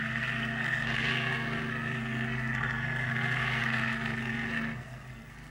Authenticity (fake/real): fake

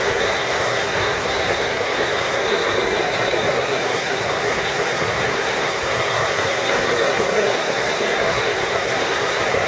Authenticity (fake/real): fake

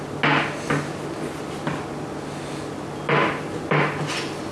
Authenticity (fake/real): real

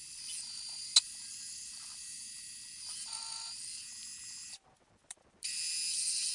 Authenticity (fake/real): real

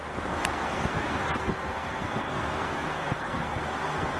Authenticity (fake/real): fake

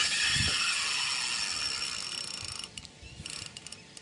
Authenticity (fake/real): real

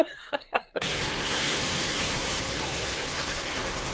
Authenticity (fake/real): fake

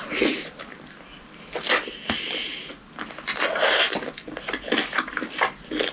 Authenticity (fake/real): real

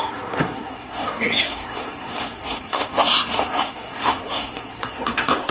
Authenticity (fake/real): fake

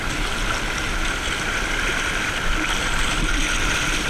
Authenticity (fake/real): real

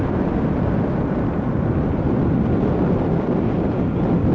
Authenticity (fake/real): real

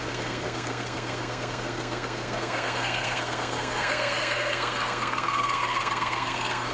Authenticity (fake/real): fake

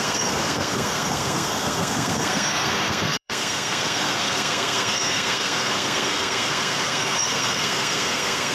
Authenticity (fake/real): fake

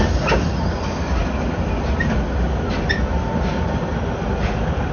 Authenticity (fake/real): real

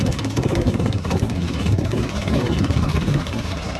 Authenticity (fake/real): fake